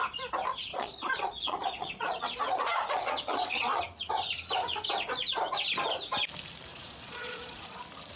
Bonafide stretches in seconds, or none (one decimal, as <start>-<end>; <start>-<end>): 0.0-0.7; 3.8-6.7; 7.6-8.2